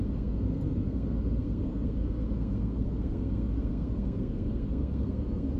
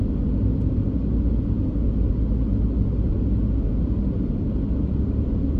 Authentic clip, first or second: second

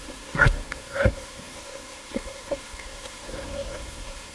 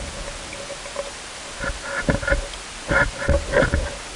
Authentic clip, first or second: second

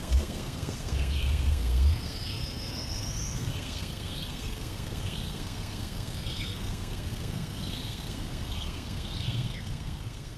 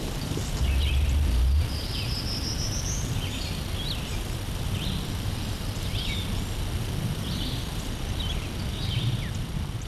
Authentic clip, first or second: second